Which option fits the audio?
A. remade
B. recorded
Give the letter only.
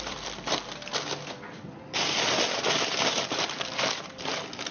B